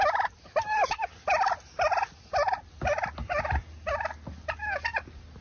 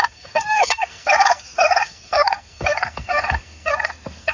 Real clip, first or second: first